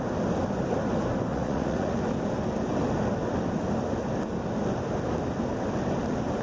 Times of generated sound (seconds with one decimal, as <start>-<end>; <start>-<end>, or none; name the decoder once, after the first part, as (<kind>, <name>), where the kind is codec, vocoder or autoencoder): 1.3-2.0 (vocoder, Vocos)